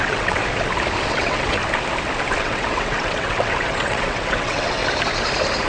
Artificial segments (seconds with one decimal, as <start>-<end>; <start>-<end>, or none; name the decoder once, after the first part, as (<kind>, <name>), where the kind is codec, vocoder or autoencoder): 0.0-0.4 (vocoder, WaveNeXt); 1.1-1.6; 2.4-4.8